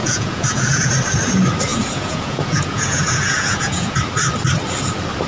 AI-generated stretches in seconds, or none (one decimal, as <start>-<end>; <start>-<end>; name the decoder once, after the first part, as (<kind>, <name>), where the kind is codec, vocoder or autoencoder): 0.0-0.9 (vocoder, Vocos); 1.7-4.0